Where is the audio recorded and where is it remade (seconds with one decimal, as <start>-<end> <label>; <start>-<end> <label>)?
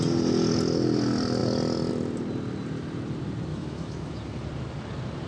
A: 0.0-3.5 recorded; 3.5-4.1 remade; 4.1-5.3 recorded